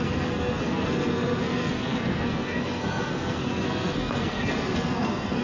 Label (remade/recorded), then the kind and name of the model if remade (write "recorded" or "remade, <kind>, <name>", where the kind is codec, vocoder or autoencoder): remade, codec, SNAC